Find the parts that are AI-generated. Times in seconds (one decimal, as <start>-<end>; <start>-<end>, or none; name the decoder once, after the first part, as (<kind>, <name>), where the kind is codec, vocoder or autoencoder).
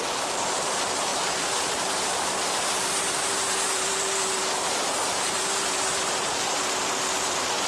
0.0-7.7 (vocoder, BigVGAN v2)